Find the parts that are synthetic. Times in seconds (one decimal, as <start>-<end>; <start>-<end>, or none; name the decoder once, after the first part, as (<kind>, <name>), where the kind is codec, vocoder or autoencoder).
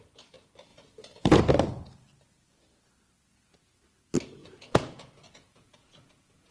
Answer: 0.7-1.4 (vocoder, Vocos); 4.4-6.5